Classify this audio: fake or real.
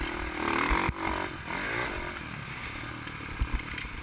real